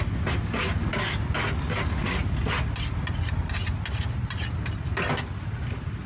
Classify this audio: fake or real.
real